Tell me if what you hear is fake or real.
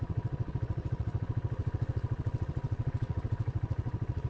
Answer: fake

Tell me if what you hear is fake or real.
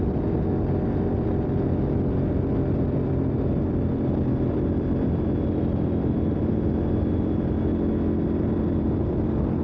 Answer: real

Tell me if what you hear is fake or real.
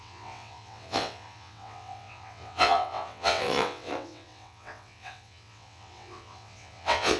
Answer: fake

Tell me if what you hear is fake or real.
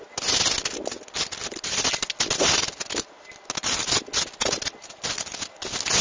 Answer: real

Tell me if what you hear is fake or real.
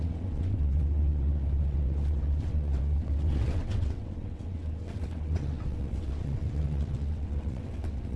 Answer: fake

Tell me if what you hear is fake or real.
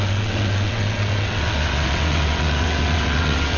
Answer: fake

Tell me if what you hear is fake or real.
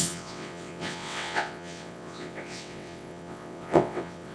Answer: fake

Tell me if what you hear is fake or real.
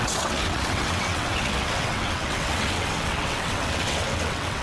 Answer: fake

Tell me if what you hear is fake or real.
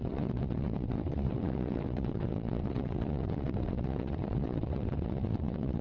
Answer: fake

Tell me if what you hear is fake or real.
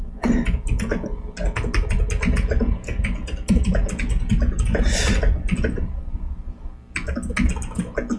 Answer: real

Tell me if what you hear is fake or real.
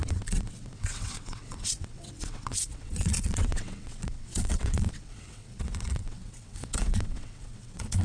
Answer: fake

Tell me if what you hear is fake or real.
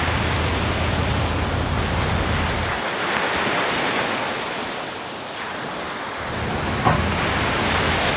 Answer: real